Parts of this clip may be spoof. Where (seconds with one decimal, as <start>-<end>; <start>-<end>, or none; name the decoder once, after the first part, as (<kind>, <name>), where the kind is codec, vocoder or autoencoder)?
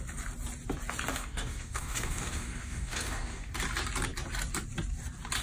1.1-3.5 (codec, DAC)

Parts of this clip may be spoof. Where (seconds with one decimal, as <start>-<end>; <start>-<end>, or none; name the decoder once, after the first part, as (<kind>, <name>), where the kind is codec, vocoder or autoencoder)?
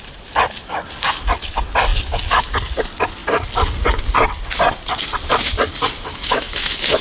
6.1-7.0 (autoencoder, DAC-VAE)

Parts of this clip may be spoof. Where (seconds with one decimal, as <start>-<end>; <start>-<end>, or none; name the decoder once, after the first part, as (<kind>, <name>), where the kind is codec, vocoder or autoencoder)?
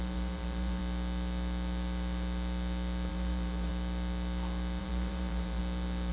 0.0-0.8 (vocoder, BigVGAN v2); 3.1-3.7; 4.8-5.6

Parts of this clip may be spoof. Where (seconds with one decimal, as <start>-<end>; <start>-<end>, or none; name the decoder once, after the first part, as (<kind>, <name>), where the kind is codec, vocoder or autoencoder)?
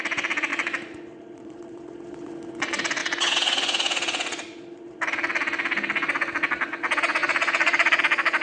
0.5-2.3 (vocoder, Vocos); 3.0-5.0; 7.2-8.0